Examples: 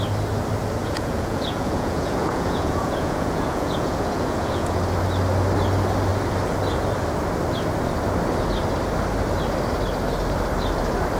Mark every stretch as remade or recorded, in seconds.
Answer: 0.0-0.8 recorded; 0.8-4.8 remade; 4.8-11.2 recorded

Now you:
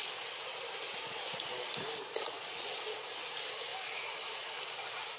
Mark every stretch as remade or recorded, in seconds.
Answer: 0.0-3.7 recorded; 3.7-4.6 remade; 4.6-5.2 recorded

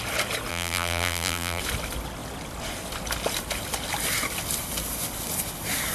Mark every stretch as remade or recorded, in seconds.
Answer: 0.0-0.5 recorded; 0.5-1.6 remade; 1.6-5.9 recorded

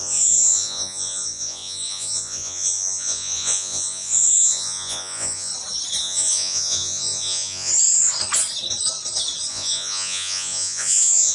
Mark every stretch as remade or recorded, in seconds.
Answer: 0.0-5.5 remade; 5.5-6.0 recorded; 6.0-7.7 remade; 7.7-9.5 recorded; 9.5-11.3 remade